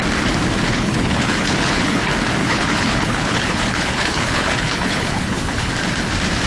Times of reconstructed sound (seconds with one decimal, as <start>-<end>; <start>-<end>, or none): 0.7-2.0; 2.4-5.7